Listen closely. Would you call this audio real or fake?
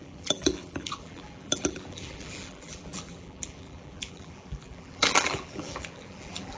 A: fake